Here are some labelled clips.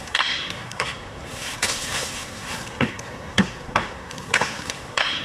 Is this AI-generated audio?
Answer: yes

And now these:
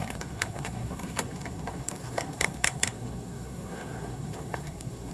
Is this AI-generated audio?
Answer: yes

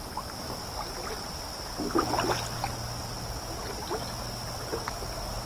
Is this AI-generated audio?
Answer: no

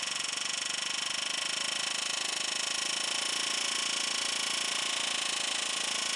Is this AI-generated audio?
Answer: no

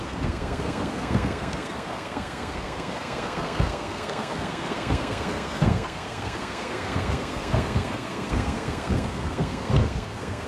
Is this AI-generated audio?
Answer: yes